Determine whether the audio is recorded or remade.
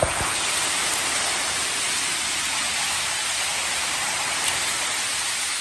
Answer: recorded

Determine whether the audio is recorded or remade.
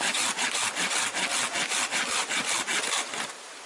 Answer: recorded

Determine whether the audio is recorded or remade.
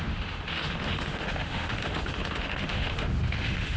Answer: remade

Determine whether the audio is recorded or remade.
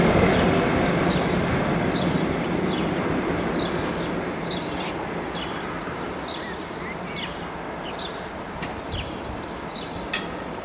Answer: recorded